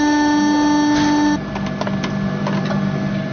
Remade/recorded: recorded